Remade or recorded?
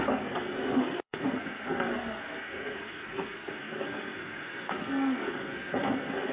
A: remade